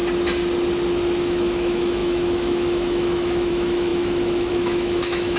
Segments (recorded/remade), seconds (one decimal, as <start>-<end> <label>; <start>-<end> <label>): 0.0-1.2 recorded; 1.2-5.4 remade